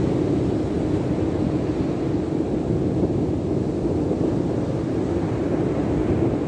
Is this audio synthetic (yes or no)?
no